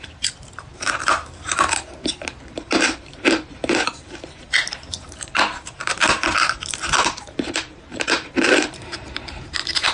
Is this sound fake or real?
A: fake